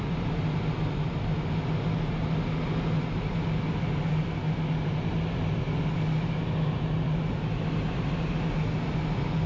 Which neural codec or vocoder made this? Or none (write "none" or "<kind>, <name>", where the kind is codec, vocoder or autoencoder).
none